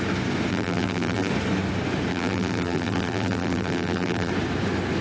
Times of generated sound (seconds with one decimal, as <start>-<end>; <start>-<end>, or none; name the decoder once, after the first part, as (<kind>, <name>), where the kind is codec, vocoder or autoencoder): 0.5-1.3 (vocoder, BigVGAN v2); 2.1-4.3